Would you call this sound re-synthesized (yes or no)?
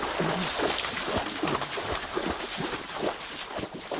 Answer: no